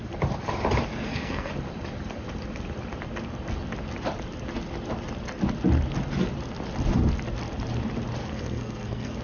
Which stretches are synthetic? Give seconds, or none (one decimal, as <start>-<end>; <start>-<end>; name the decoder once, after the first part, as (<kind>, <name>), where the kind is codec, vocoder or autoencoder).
0.9-1.5 (codec, SNAC); 8.2-9.2

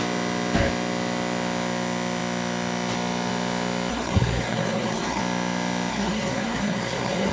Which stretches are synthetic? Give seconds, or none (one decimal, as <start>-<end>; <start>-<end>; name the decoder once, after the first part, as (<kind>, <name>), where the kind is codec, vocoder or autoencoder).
3.9-5.2 (codec, SNAC); 5.9-7.3

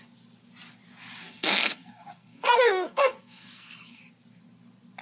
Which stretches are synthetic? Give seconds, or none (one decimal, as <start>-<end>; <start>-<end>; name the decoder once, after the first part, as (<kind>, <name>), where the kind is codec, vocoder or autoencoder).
1.2-4.0 (codec, SNAC)

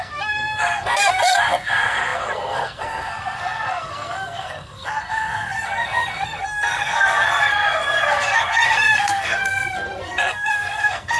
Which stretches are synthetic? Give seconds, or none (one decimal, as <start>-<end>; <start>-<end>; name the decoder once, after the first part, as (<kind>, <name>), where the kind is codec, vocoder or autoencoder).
0.0-11.2 (codec, SNAC)

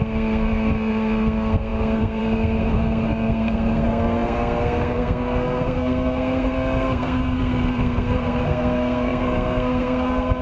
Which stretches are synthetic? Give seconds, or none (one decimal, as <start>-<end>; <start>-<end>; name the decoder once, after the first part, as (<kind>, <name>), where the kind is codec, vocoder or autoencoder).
0.0-10.4 (codec, SNAC)

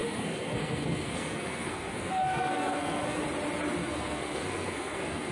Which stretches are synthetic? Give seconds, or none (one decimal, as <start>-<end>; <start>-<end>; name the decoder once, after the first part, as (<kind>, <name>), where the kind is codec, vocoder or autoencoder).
0.0-3.2 (codec, SNAC); 3.8-5.3